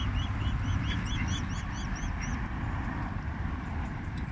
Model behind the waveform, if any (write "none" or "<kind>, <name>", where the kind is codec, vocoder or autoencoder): vocoder, BigVGAN v2